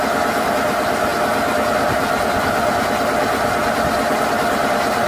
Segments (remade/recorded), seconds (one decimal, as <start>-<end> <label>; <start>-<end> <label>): 0.0-5.1 recorded